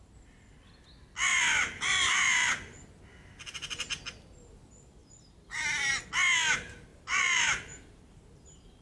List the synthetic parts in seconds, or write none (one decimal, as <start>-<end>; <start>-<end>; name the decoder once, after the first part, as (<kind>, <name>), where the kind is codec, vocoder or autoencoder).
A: 1.3-2.5 (vocoder, BigVGAN v2); 5.0-6.0; 6.9-8.8

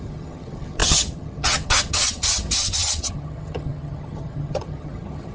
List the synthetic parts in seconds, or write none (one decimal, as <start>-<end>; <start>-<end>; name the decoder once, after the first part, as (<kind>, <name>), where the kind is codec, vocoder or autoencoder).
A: 0.0-5.3 (vocoder, HiFi-GAN)

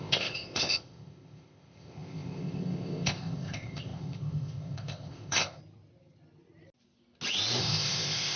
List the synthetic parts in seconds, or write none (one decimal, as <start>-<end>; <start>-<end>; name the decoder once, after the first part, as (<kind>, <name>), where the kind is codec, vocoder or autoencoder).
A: 0.0-5.6 (codec, ZipCodec); 7.6-8.4

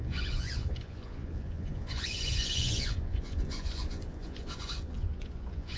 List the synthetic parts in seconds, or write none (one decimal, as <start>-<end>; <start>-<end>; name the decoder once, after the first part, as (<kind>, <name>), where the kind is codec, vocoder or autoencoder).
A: 0.0-5.8 (vocoder, Vocos)

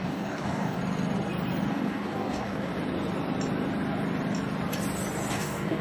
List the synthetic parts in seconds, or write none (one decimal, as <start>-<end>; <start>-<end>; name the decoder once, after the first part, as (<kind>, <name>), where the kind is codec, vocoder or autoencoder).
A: 0.0-0.8 (codec, DAC); 1.7-2.7; 5.3-5.8

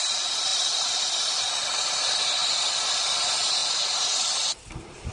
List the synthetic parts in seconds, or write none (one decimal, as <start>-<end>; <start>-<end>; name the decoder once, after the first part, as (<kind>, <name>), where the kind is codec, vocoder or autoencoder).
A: 2.4-3.2 (vocoder, BigVGAN v2)

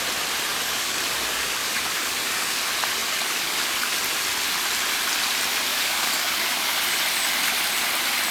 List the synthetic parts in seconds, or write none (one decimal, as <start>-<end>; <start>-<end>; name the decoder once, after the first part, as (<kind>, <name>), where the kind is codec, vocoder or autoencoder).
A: 0.5-2.6 (codec, DAC); 3.0-4.0; 5.7-6.8

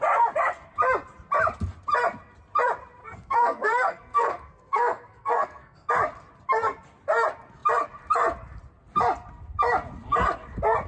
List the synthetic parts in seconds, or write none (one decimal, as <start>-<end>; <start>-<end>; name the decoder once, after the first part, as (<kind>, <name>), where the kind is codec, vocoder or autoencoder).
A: 3.0-5.9 (codec, SNAC)